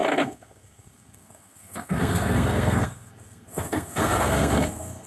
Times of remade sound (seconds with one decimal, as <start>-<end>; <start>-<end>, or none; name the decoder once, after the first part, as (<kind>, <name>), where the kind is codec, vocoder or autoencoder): 0.0-5.1 (codec, SNAC)